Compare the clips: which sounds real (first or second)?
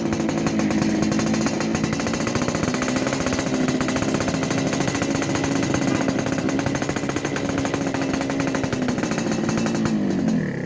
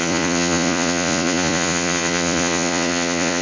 first